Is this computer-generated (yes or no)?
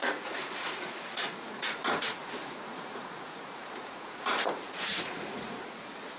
yes